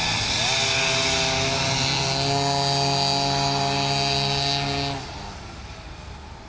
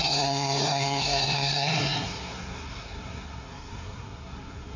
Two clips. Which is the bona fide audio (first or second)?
first